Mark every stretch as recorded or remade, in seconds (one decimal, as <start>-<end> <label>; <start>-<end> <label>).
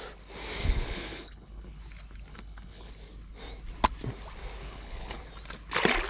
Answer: 0.0-0.6 recorded; 0.6-1.8 remade; 1.8-2.3 recorded; 2.3-2.9 remade; 2.9-4.6 recorded; 4.6-5.2 remade; 5.2-6.1 recorded